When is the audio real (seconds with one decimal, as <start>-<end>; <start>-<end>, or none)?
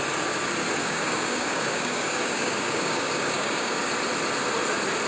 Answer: 0.0-0.8; 3.9-5.1